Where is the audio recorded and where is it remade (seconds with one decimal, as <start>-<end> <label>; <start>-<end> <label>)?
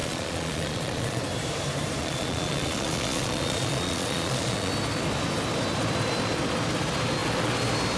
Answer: 0.0-1.2 remade; 1.2-2.0 recorded; 2.0-4.7 remade; 4.7-8.0 recorded